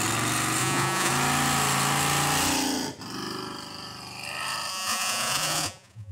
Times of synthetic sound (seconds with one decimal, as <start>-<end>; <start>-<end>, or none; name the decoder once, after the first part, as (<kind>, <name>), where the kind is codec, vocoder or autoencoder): 0.6-1.1 (vocoder, Vocos); 4.7-6.1